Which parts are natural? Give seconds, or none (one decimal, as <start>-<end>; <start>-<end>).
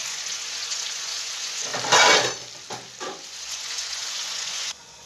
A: 1.7-3.2